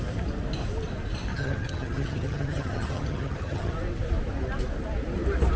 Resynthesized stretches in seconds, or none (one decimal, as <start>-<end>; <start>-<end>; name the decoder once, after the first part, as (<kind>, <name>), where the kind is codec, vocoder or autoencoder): 1.3-3.7 (vocoder, HiFi-GAN)